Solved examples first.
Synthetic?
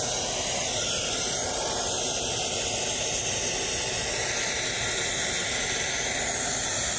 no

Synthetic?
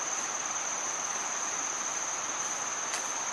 no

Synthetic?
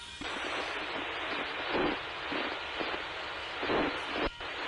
no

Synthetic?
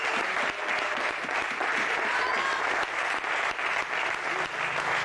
no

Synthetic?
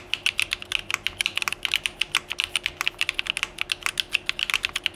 no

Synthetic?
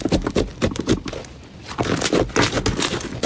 no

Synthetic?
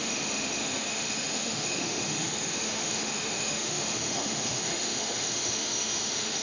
yes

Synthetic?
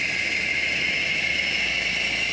no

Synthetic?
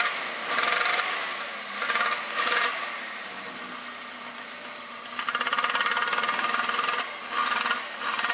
no